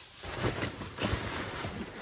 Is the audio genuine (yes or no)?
no